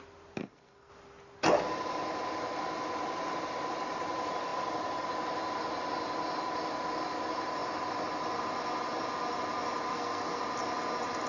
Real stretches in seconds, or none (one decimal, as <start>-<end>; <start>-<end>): 0.0-0.4; 0.9-9.9; 10.4-11.3